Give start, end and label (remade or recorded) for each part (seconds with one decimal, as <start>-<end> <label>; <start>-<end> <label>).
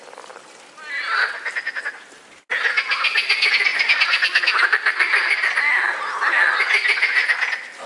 0.0-7.9 recorded